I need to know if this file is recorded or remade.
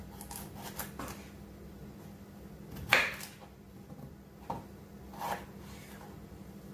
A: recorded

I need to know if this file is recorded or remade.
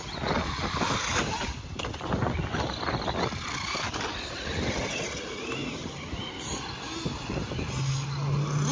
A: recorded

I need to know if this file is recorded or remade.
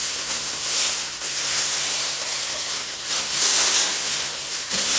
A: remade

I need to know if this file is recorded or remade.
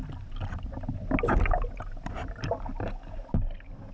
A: recorded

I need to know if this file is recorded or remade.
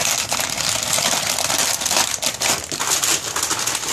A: recorded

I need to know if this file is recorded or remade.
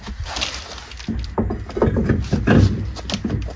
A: recorded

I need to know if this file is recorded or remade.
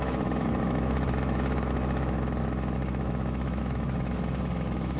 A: remade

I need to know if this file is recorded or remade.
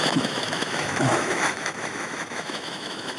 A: remade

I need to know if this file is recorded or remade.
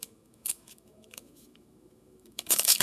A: remade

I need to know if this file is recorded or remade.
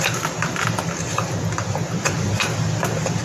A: recorded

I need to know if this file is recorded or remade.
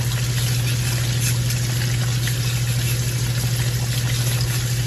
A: recorded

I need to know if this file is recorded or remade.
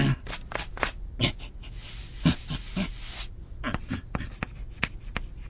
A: recorded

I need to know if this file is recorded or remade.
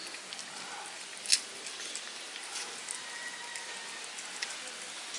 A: recorded